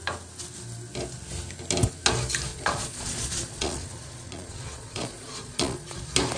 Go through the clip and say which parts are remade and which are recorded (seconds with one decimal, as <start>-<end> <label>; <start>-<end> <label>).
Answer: 0.0-2.5 recorded; 2.5-6.0 remade; 6.0-6.4 recorded